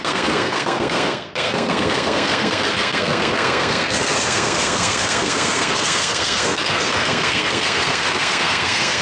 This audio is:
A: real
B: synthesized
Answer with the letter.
B